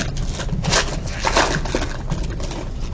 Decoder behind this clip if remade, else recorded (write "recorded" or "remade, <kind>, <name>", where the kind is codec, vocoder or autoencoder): recorded